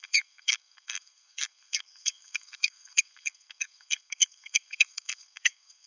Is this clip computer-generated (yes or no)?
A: yes